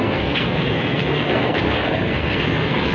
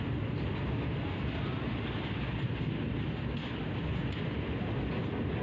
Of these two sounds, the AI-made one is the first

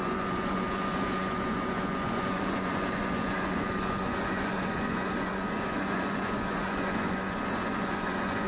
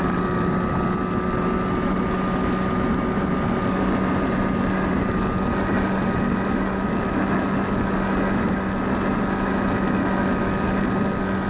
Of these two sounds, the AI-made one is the first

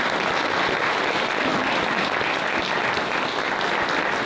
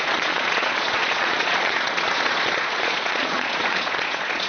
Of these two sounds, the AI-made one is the second